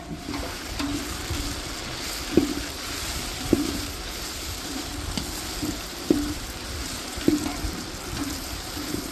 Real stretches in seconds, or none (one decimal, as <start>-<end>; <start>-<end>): 0.9-2.5; 4.9-5.7